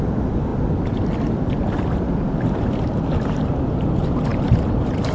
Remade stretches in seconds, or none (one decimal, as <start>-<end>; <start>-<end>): none